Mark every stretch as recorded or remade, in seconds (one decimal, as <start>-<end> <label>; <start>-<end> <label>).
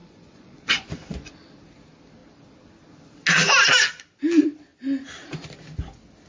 0.0-1.3 remade; 1.3-6.3 recorded